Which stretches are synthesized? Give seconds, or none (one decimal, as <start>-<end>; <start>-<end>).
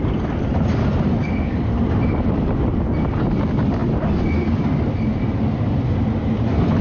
none